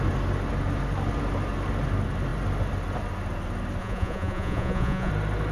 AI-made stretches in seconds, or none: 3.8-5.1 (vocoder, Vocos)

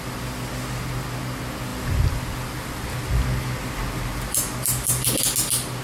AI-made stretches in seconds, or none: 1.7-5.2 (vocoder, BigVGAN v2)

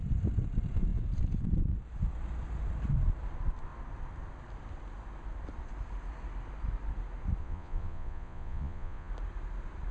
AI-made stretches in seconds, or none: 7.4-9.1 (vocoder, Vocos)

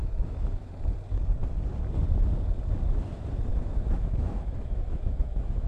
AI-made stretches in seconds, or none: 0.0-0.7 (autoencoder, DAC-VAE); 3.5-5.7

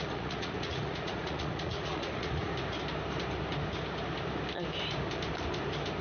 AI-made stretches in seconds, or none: 0.0-2.5 (vocoder, Vocos)